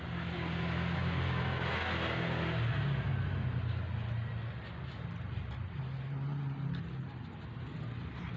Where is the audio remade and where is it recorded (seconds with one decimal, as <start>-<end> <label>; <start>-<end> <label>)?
0.0-8.4 recorded